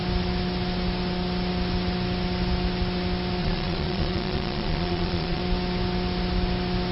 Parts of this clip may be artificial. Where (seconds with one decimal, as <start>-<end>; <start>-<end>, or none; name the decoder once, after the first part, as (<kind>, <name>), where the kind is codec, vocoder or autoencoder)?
3.4-5.4 (vocoder, Vocos)